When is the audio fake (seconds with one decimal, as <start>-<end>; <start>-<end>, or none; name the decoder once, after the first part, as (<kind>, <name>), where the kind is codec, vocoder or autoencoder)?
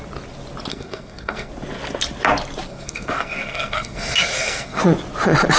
0.7-1.5 (codec, SNAC); 2.7-4.8